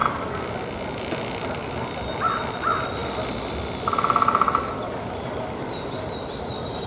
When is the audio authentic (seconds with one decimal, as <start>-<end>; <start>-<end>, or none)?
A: 2.2-6.9